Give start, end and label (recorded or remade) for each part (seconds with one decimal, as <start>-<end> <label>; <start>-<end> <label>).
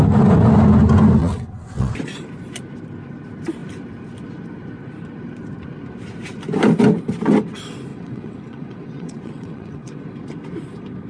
0.0-1.2 recorded; 1.2-1.9 remade; 1.9-7.9 recorded; 7.9-10.0 remade; 10.0-11.1 recorded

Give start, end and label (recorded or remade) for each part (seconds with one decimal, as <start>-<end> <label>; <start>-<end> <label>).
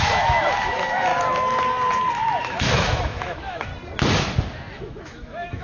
0.0-1.1 remade; 1.1-2.4 recorded; 2.4-3.7 remade; 3.7-4.7 recorded; 4.7-5.6 remade